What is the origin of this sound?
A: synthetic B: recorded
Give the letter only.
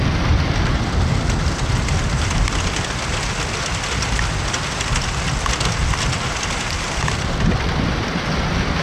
B